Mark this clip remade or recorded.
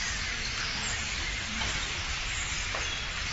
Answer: remade